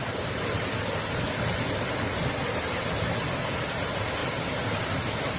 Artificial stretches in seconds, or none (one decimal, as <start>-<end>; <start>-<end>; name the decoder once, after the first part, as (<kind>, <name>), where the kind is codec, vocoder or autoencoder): none